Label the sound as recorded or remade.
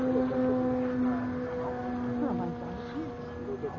recorded